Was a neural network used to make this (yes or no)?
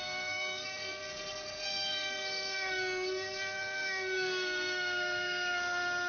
yes